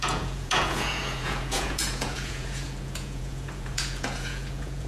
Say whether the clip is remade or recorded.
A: remade